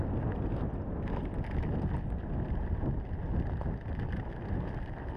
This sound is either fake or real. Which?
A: real